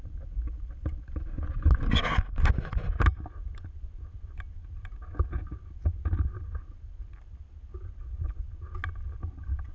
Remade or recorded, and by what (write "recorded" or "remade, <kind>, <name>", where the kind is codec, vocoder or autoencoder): recorded